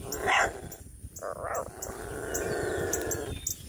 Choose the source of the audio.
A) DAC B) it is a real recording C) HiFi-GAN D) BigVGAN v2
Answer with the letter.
B